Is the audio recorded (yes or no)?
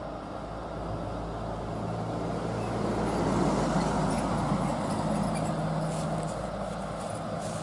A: yes